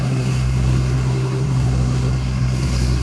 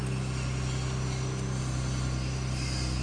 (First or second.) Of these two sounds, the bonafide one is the second